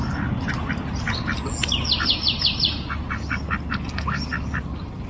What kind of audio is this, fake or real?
real